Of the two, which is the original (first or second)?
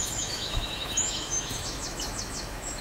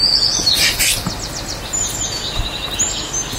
second